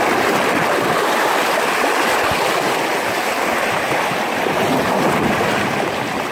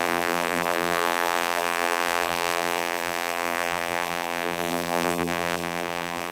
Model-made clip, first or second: second